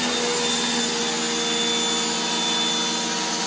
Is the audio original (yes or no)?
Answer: yes